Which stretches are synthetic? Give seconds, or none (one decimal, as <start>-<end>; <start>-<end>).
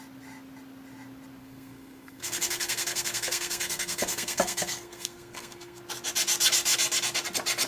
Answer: 1.4-5.8